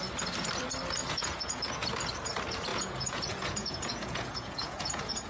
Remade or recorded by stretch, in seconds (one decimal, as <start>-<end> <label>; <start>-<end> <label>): 0.0-1.0 recorded; 1.0-1.9 remade; 1.9-2.7 recorded; 2.7-5.3 remade